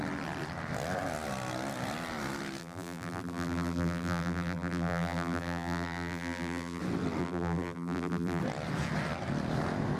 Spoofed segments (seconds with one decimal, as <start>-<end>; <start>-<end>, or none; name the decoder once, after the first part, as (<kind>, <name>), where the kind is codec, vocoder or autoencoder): 2.6-6.8 (vocoder, BigVGAN v2); 7.2-8.4